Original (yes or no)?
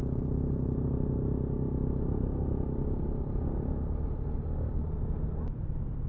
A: yes